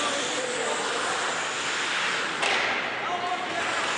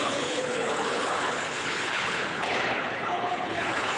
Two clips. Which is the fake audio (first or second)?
second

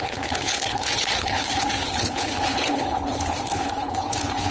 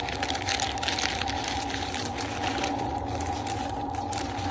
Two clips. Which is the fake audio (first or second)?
first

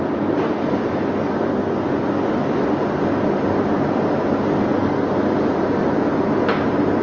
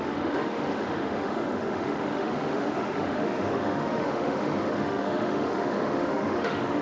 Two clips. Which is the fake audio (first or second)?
second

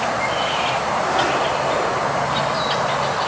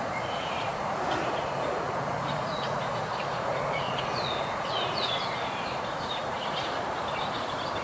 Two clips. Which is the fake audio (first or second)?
second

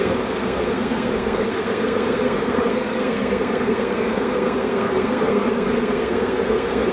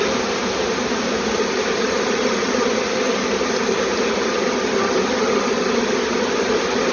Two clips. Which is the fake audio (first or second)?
first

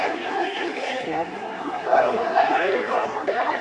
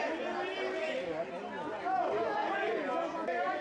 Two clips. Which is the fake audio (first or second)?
first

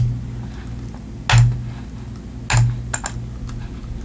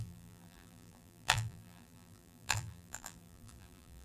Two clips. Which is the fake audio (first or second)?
second